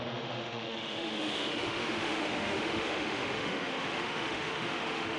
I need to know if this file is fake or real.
fake